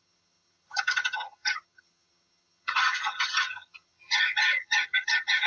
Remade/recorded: remade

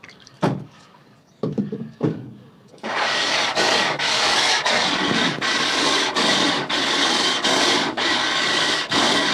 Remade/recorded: remade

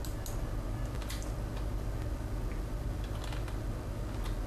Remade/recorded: recorded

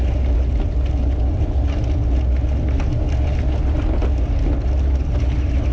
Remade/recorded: recorded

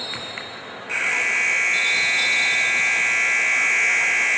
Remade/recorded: recorded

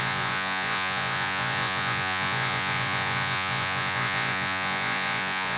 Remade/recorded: remade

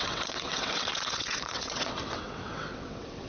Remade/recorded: remade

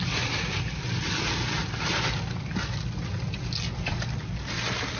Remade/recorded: recorded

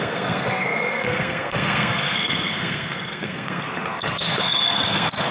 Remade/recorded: remade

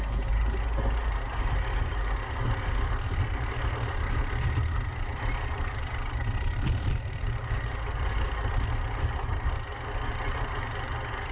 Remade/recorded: recorded